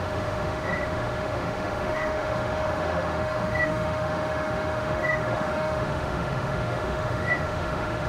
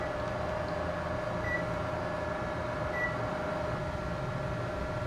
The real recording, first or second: second